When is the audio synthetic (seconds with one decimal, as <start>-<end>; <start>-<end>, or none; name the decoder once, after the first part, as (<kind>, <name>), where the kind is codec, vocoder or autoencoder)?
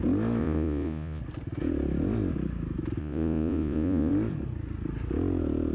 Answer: 0.4-1.2 (vocoder, Vocos); 3.0-4.1